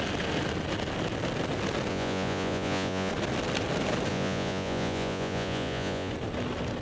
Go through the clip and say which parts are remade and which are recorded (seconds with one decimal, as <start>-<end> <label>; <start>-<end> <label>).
0.0-1.9 recorded; 1.9-3.1 remade; 3.1-4.1 recorded; 4.1-6.1 remade; 6.1-6.8 recorded